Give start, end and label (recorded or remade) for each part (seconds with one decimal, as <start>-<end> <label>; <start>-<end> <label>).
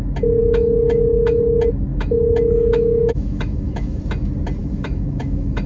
0.0-0.4 recorded; 0.4-1.4 remade; 1.4-1.9 recorded; 1.9-4.0 remade; 4.0-4.6 recorded; 4.6-5.7 remade